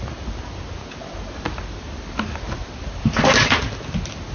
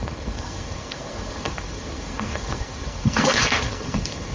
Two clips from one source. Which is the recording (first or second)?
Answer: first